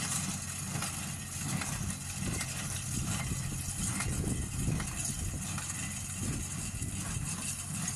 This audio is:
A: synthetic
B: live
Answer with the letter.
B